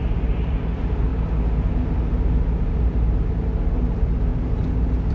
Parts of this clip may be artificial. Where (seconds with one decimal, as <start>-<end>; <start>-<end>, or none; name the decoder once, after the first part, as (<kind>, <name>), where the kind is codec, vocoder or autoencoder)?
0.0-1.1 (vocoder, BigVGAN v2); 3.9-4.3

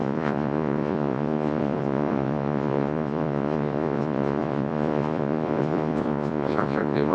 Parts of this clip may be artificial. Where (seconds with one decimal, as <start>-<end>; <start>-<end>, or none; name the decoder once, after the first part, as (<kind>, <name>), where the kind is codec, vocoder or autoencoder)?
0.0-7.1 (vocoder, Vocos)

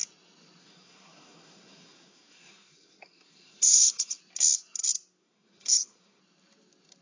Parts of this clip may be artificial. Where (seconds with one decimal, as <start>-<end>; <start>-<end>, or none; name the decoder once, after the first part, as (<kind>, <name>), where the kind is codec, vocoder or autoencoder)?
0.6-4.2 (codec, SNAC); 5.2-6.2

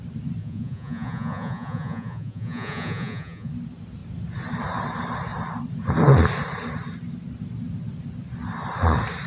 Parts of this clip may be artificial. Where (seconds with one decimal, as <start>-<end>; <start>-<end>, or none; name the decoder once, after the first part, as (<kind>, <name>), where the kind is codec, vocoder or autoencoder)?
0.4-3.5 (vocoder, Vocos)

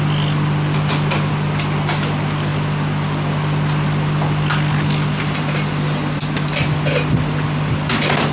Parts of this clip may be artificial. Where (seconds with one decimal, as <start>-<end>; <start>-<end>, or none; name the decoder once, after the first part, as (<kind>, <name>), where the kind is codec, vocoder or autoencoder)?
none